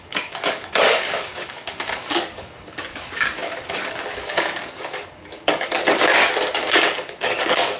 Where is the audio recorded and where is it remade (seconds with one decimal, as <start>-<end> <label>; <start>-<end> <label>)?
0.0-6.1 remade; 6.1-6.7 recorded; 6.7-7.8 remade